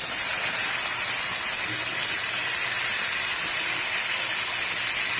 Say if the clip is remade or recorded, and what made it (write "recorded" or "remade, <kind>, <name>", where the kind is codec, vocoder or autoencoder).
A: recorded